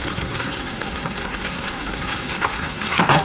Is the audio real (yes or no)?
no